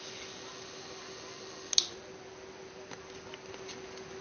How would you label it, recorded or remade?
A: recorded